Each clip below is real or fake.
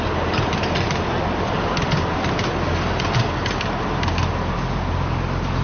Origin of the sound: real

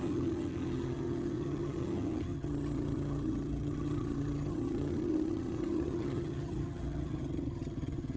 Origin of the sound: fake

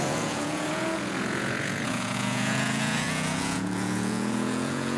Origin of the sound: fake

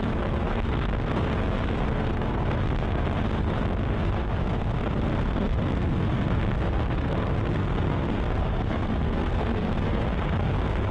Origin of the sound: fake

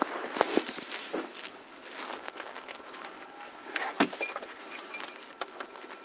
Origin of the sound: real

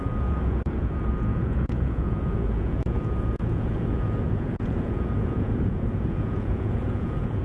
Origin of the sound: fake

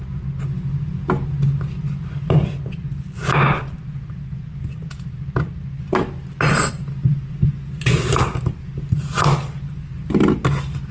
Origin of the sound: real